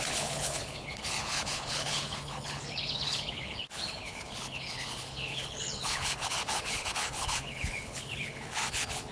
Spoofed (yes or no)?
yes